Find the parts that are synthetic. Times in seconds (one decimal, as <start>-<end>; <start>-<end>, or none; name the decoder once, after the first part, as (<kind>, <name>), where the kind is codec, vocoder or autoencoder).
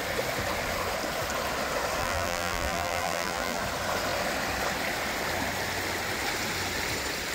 2.0-3.6 (vocoder, BigVGAN v2)